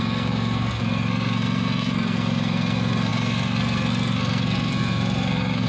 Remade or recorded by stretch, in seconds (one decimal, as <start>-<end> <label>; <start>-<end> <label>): 0.0-5.7 remade